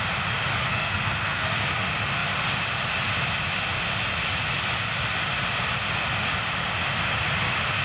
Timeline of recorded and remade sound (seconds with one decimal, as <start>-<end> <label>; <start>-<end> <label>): 0.0-0.6 recorded; 0.6-1.6 remade; 1.6-7.8 recorded

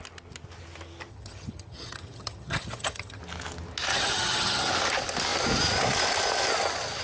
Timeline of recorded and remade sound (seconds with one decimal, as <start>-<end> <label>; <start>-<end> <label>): 0.0-1.1 recorded; 1.1-3.2 remade; 3.2-3.9 recorded; 3.9-4.7 remade; 4.7-7.0 recorded

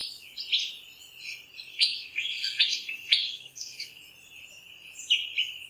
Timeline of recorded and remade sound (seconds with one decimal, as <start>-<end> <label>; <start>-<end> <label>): 0.0-1.7 recorded; 1.7-4.0 remade; 4.0-5.7 recorded

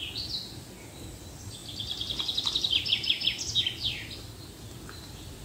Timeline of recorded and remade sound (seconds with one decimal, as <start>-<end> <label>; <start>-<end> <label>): 0.0-5.4 recorded

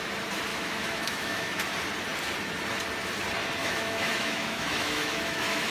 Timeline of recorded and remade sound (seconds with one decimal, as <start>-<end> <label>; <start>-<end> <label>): 0.0-0.5 recorded; 0.5-1.6 remade; 1.6-3.6 recorded; 3.6-5.7 remade

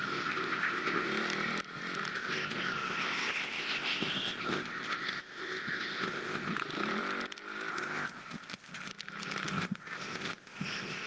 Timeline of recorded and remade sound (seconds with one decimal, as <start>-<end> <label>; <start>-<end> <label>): 0.0-1.1 remade; 1.1-2.1 recorded; 2.1-6.5 remade; 6.5-7.7 recorded; 7.7-8.9 remade; 8.9-9.5 recorded; 9.5-11.1 remade

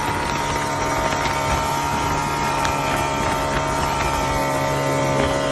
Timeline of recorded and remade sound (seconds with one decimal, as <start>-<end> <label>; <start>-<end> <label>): 0.0-5.5 recorded